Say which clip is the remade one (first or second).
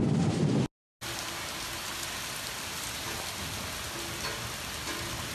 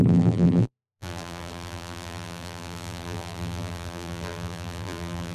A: second